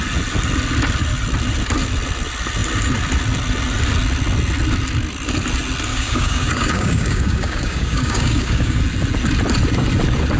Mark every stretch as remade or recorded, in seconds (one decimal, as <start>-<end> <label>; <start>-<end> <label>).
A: 0.0-5.9 recorded; 5.9-8.8 remade; 8.8-10.4 recorded